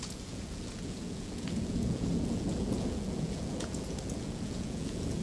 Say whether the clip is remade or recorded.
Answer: remade